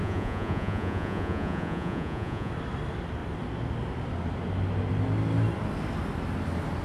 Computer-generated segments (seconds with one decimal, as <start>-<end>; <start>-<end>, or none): 0.0-2.5